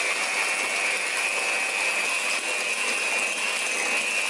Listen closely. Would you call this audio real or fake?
real